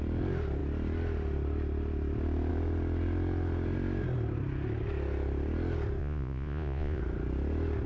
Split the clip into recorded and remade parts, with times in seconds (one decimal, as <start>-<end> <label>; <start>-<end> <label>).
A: 0.0-6.0 recorded; 6.0-7.0 remade; 7.0-7.9 recorded